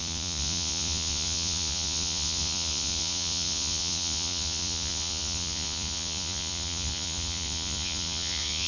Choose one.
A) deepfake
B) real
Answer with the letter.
A